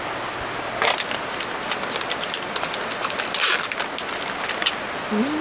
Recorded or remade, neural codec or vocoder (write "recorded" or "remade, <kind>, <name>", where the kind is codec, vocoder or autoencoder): recorded